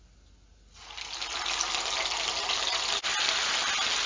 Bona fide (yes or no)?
yes